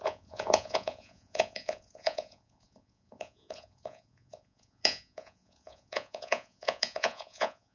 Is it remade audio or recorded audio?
remade